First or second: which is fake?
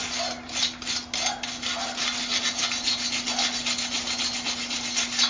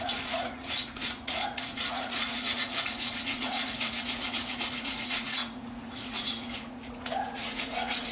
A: second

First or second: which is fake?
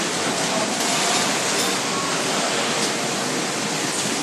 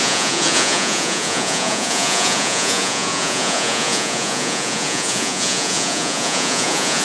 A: second